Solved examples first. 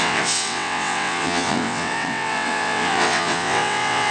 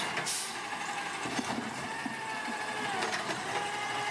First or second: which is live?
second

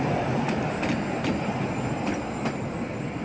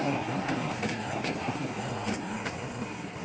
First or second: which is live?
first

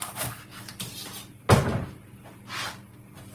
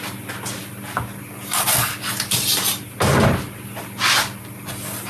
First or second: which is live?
second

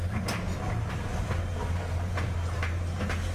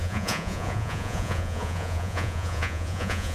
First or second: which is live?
first